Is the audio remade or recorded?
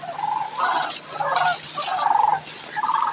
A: recorded